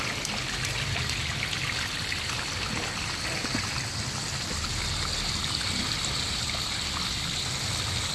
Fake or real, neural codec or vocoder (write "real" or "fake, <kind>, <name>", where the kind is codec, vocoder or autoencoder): real